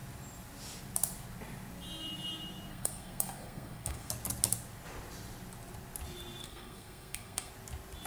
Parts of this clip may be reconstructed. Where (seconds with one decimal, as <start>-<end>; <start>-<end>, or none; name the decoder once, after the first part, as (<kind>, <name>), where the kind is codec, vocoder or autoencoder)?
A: 2.7-4.1 (codec, SNAC); 6.4-7.5